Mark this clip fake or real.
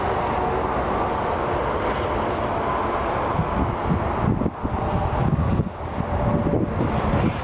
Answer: real